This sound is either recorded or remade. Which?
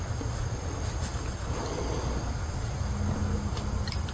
recorded